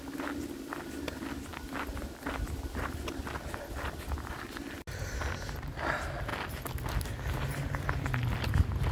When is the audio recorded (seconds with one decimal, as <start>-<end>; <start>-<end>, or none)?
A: 0.0-8.9